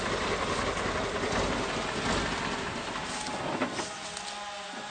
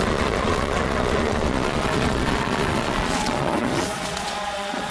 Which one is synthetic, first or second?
second